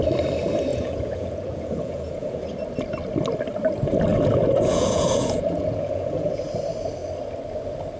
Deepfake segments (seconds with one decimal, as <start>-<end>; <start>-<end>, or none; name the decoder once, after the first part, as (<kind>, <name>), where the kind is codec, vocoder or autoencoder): 0.7-2.4 (vocoder, Vocos); 4.1-6.3